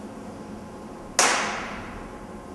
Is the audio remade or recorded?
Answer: recorded